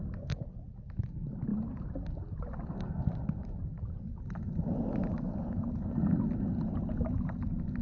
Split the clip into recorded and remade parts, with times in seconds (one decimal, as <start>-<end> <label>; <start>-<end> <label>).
0.0-1.5 recorded; 1.5-5.7 remade; 5.7-7.8 recorded